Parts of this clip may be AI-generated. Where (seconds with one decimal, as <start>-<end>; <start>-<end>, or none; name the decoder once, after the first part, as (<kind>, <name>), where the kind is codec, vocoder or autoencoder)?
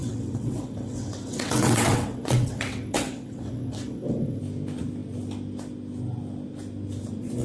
0.0-4.4 (vocoder, WaveNeXt)